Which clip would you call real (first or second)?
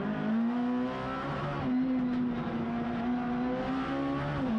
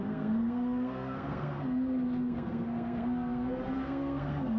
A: first